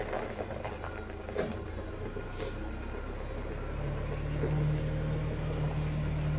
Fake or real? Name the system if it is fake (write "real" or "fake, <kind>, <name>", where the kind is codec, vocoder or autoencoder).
real